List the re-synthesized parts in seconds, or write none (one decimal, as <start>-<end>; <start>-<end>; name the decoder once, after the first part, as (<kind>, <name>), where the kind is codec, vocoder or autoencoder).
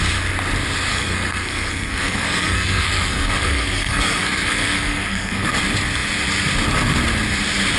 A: 0.9-5.6 (codec, SNAC)